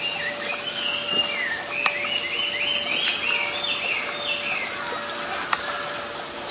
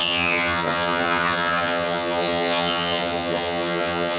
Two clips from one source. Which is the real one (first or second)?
first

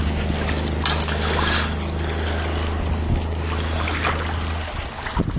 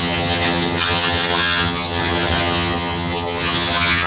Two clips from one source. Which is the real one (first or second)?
first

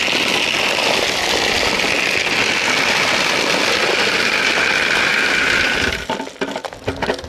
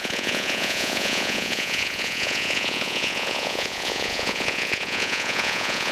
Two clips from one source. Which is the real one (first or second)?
first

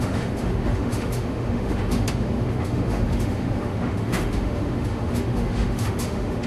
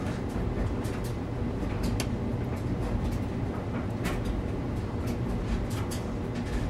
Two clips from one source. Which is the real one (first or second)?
second